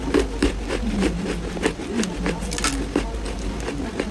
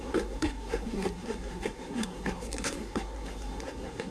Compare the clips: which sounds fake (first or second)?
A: second